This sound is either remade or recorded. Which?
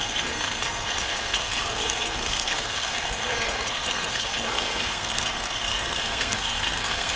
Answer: remade